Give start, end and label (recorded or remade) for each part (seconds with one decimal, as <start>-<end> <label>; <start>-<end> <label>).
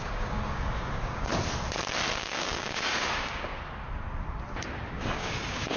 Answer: 0.0-1.3 remade; 1.3-2.2 recorded; 2.2-3.5 remade; 3.5-4.9 recorded; 4.9-5.8 remade